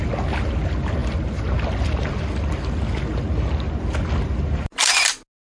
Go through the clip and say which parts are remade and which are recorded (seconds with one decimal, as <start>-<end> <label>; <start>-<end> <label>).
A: 0.0-5.6 recorded